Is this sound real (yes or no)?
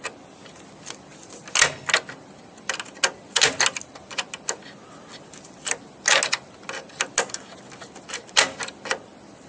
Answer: yes